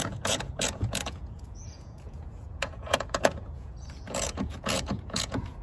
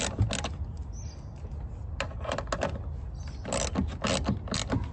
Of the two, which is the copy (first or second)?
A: first